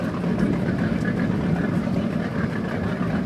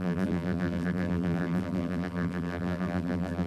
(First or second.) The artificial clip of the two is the second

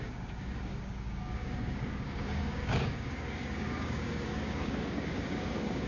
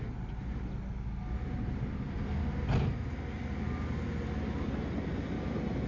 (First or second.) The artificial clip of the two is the first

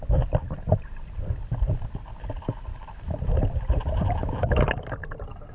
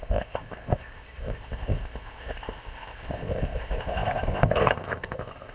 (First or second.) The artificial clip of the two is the second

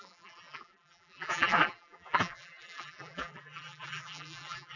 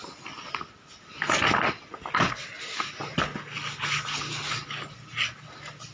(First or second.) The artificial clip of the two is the first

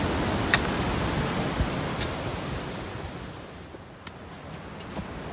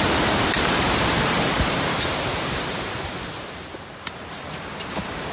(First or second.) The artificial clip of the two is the second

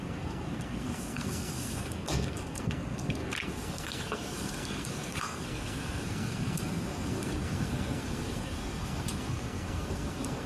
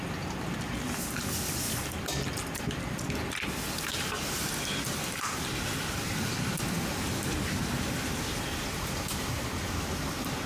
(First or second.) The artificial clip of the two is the first